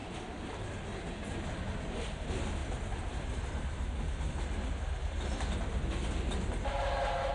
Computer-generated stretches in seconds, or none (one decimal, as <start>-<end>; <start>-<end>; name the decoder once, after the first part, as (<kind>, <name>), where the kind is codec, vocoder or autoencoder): 2.6-4.3 (vocoder, BigVGAN v2)